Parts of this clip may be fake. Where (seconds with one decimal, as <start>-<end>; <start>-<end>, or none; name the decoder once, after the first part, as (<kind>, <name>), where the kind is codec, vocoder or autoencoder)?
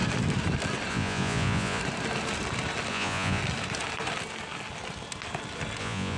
0.9-1.8 (vocoder, Vocos); 2.9-3.4; 5.8-6.2